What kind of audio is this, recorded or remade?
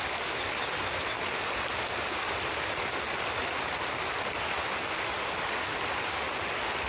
recorded